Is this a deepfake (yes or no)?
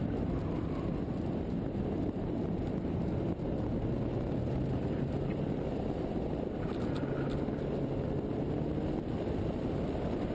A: no